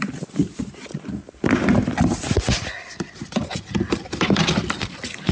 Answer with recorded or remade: recorded